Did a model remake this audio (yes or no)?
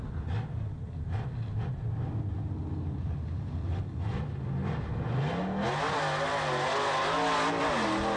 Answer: no